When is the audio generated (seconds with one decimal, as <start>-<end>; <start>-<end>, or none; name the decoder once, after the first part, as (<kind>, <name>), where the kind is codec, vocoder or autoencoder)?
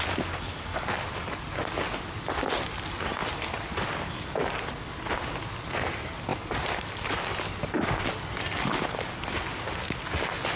none